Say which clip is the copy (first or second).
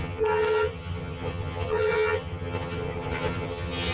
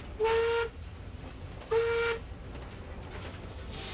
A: first